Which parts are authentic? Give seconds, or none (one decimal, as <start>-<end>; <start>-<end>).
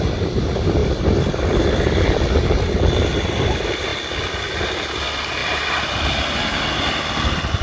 0.0-7.6